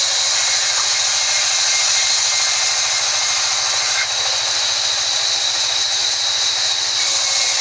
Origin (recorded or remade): recorded